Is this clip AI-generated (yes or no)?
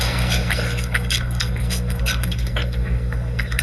yes